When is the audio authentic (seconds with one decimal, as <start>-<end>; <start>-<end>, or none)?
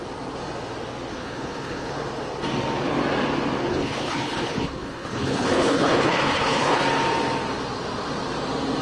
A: 0.0-1.1; 1.9-3.7; 6.8-8.8